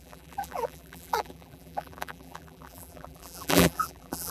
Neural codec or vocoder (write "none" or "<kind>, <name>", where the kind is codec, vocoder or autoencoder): vocoder, BigVGAN v2